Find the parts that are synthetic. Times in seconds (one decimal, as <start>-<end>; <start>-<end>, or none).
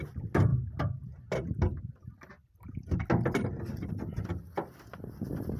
none